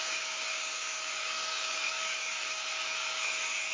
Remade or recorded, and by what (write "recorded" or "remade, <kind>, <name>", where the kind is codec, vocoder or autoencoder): remade, codec, DAC